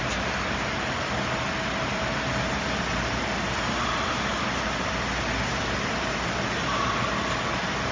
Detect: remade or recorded recorded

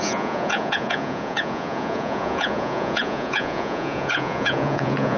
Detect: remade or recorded remade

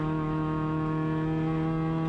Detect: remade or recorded recorded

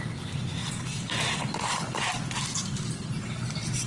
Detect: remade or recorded recorded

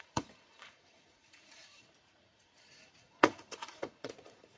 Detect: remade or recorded remade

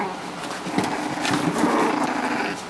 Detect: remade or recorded recorded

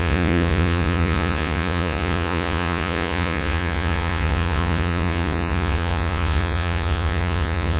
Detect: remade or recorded remade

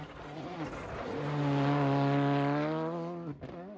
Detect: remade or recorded recorded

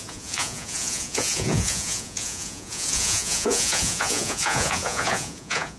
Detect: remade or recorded remade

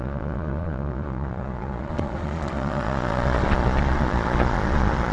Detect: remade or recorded remade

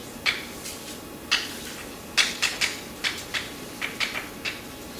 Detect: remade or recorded recorded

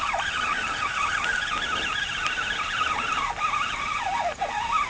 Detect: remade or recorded recorded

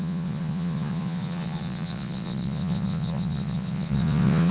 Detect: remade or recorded remade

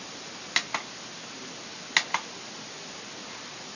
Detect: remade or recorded recorded